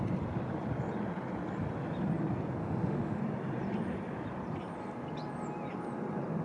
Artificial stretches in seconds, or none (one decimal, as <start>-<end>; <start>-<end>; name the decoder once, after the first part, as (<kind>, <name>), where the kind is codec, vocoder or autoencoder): 2.6-3.2 (autoencoder, DAC-VAE)